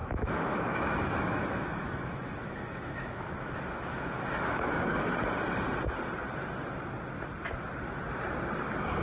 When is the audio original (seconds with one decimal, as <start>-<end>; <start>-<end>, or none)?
5.1-9.0